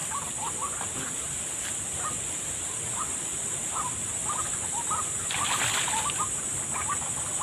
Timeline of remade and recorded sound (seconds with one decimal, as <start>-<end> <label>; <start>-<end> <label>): 0.0-7.4 recorded